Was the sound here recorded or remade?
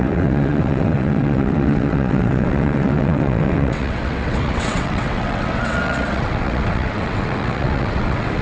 remade